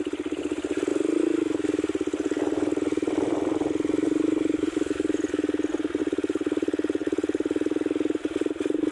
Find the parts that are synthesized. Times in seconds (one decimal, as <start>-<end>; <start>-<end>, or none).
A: none